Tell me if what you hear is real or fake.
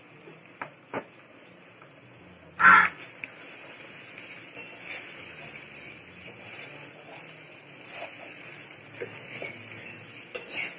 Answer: real